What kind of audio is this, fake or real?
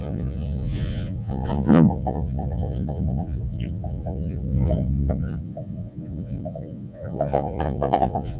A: fake